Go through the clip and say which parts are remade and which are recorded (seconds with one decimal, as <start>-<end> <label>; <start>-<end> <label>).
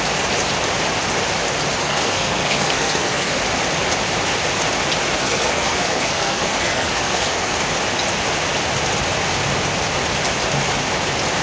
0.0-1.8 recorded; 1.8-3.4 remade; 3.4-5.2 recorded; 5.2-7.6 remade; 7.6-11.4 recorded